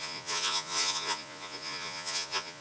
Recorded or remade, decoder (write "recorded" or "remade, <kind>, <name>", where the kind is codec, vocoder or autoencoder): remade, vocoder, Vocos